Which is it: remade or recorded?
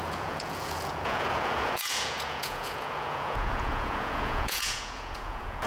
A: remade